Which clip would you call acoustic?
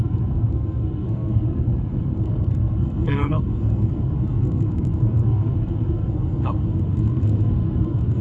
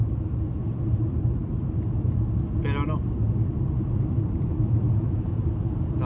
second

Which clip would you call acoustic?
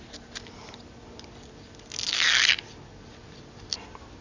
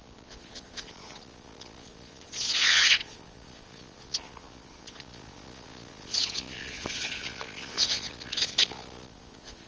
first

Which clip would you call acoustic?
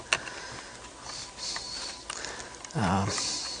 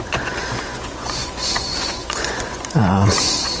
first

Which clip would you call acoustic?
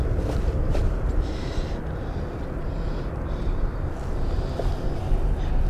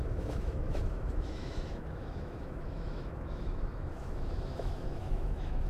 first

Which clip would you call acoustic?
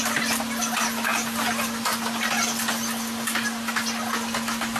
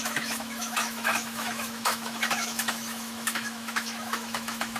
first